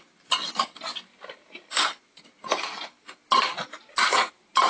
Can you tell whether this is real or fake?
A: real